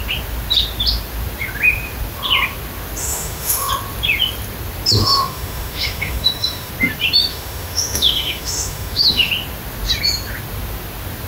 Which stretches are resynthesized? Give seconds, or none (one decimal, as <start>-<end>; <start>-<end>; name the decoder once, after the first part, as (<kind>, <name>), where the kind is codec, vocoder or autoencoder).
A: 3.0-3.7 (autoencoder, DAC-VAE); 5.0-6.7; 7.3-9.3